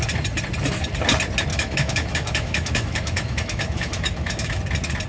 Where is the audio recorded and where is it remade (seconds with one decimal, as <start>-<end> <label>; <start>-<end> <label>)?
0.0-1.5 recorded; 1.5-4.6 remade; 4.6-5.1 recorded